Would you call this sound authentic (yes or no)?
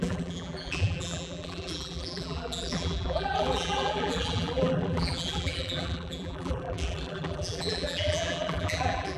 no